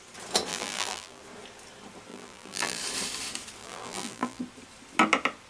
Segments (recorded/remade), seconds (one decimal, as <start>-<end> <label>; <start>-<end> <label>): 0.0-0.5 recorded; 0.5-1.2 remade; 1.2-2.1 recorded; 2.1-2.8 remade; 2.8-3.6 recorded; 3.6-4.4 remade; 4.4-5.5 recorded

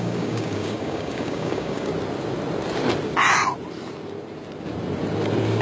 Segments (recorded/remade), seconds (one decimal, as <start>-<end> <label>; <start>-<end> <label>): 0.0-1.9 remade; 1.9-5.6 recorded

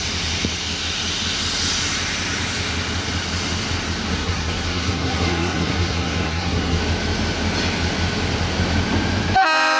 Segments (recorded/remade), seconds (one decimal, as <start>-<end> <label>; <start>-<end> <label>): 0.0-4.1 recorded; 4.1-6.8 remade; 6.8-9.8 recorded

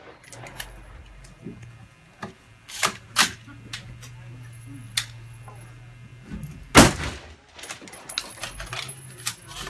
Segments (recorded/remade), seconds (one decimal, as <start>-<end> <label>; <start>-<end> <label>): 0.0-9.7 recorded

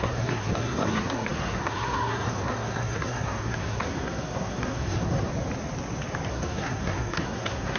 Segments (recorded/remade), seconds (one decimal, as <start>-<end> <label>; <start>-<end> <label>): 0.0-5.3 remade; 5.3-6.3 recorded; 6.3-7.8 remade